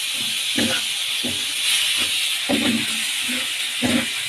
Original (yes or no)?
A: yes